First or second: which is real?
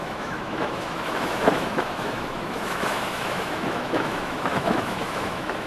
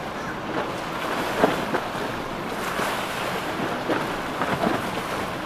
second